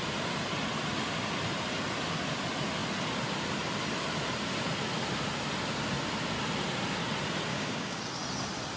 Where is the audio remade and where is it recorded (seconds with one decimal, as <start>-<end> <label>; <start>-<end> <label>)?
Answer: 0.0-7.5 recorded; 7.5-8.0 remade; 8.0-8.8 recorded

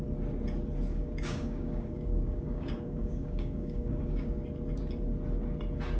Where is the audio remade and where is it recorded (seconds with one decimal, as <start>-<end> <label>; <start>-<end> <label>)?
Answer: 0.0-0.9 recorded; 0.9-4.3 remade; 4.3-6.0 recorded